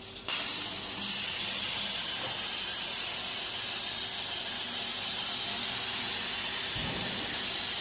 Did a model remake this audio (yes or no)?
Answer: no